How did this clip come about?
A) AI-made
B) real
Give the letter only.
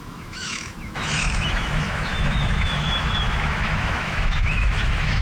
A